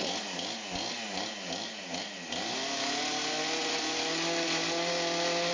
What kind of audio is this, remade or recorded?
recorded